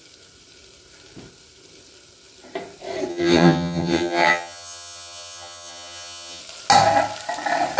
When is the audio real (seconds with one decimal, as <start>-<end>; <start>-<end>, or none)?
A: 0.0-3.1; 6.4-7.8